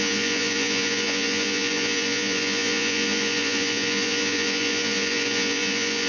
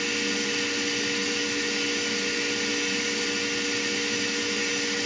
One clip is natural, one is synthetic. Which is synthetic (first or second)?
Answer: first